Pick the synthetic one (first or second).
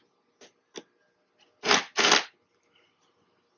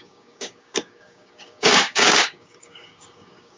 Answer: second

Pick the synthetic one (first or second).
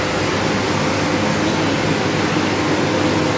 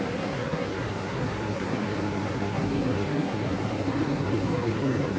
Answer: second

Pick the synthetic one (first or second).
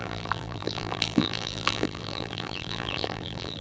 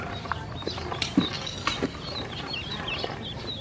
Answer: first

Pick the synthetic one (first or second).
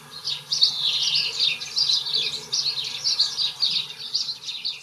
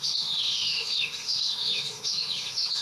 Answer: second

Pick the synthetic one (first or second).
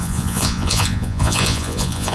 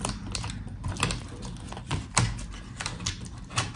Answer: first